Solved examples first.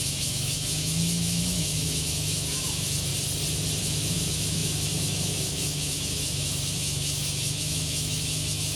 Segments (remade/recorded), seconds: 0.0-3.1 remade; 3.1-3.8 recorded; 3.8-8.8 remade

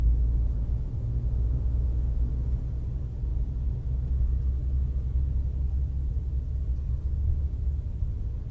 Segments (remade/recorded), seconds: 0.0-0.6 recorded; 0.6-2.6 remade; 2.6-8.5 recorded

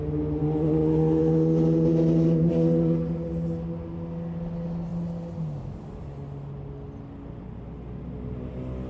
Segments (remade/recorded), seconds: 0.0-8.9 recorded

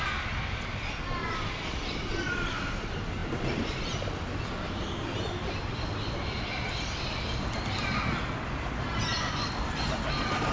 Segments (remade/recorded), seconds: 0.0-10.5 recorded

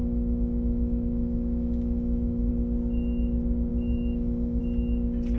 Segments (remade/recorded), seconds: 0.0-2.5 remade; 2.5-3.7 recorded; 3.7-4.6 remade; 4.6-5.4 recorded

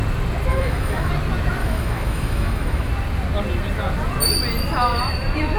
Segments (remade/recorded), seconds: 0.0-0.5 recorded; 0.5-1.1 remade; 1.1-1.6 recorded; 1.6-2.9 remade; 2.9-5.6 recorded

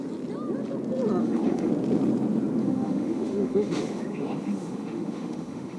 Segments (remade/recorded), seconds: 0.0-1.2 recorded; 1.2-1.7 remade; 1.7-2.6 recorded; 2.6-5.8 remade